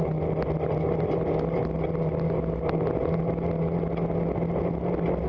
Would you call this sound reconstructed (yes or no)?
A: no